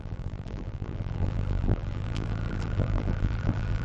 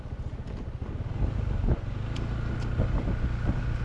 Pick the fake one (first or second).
first